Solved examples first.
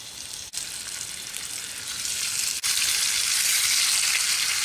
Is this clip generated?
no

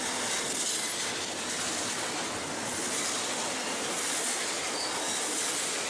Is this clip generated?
no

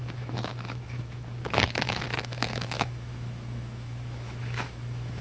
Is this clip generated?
yes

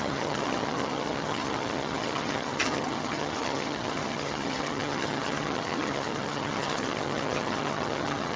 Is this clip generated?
yes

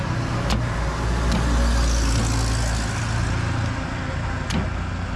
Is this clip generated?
no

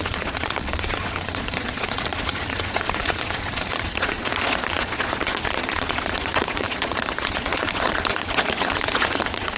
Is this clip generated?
yes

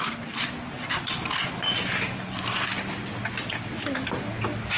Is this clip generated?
no